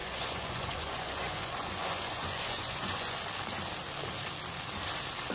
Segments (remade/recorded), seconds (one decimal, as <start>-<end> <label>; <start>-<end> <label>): 0.0-3.2 remade; 3.2-5.3 recorded